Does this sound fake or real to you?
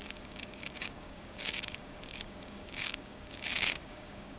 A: fake